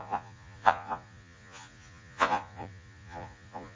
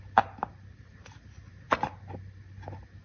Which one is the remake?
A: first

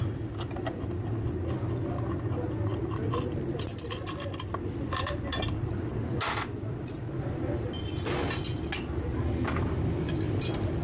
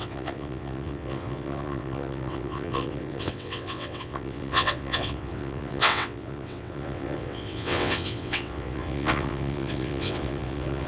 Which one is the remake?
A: second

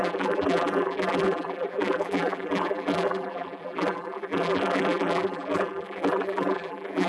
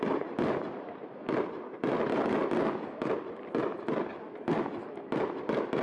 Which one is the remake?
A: first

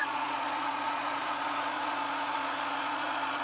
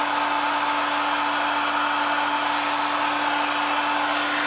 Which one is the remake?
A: first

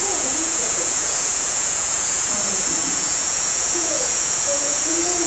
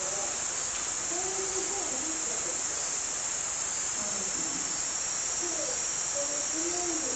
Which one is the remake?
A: first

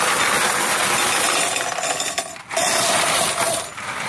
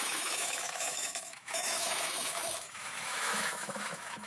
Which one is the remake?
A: second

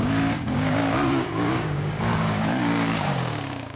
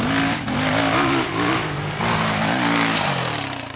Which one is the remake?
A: first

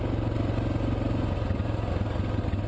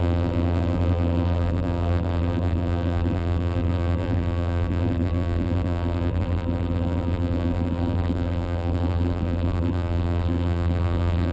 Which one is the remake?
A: second